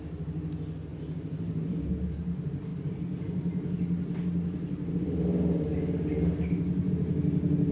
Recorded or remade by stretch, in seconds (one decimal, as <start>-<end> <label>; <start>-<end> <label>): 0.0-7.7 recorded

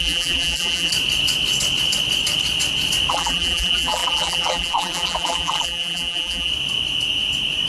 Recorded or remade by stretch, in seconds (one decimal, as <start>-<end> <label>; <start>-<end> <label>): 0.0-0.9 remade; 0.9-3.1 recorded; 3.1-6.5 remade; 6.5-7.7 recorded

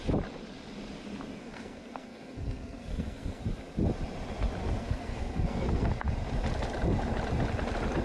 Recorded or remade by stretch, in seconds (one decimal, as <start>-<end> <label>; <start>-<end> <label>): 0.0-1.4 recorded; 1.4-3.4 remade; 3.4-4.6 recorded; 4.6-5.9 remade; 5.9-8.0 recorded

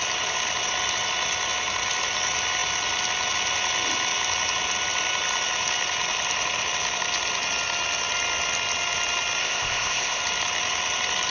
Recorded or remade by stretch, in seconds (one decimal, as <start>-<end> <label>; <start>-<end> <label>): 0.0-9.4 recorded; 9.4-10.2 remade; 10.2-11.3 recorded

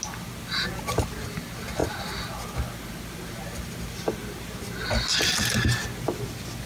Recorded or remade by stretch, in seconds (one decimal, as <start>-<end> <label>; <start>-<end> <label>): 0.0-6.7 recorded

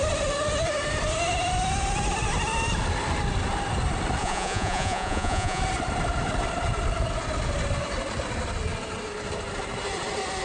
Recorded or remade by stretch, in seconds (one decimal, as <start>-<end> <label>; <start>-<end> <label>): 0.0-4.2 recorded; 4.2-5.6 remade; 5.6-10.4 recorded

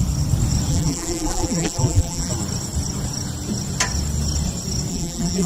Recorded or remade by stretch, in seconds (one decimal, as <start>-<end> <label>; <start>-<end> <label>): 0.0-0.7 recorded; 0.7-2.3 remade; 2.3-4.9 recorded; 4.9-5.5 remade

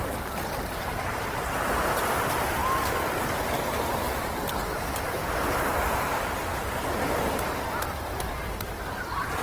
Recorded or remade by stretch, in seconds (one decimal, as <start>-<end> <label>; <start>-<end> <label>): 0.0-2.6 remade; 2.6-3.2 recorded; 3.2-9.4 remade